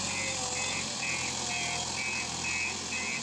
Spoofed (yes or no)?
no